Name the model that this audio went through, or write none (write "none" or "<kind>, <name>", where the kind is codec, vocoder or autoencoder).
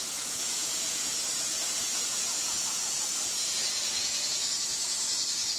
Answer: vocoder, Vocos